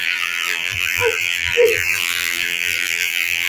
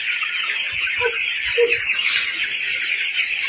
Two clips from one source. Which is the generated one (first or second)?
first